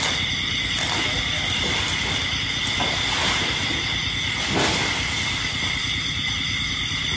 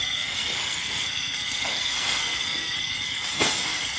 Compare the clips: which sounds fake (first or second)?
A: second